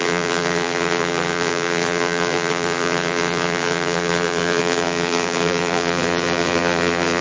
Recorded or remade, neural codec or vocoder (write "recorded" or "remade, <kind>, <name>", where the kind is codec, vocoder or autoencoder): remade, vocoder, BigVGAN v2